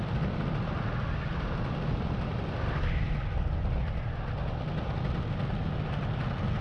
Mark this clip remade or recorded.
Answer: recorded